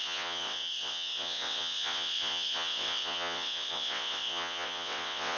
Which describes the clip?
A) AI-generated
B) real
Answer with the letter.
A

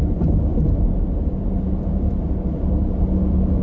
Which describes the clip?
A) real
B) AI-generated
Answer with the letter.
A